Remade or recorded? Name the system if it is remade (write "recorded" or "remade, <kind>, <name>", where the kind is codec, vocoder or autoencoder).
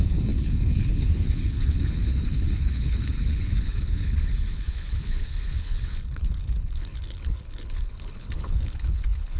remade, codec, HILCodec